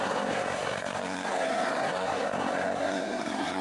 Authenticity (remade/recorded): remade